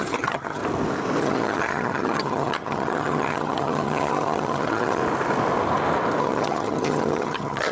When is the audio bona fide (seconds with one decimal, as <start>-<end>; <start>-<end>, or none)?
0.6-1.2; 5.0-6.2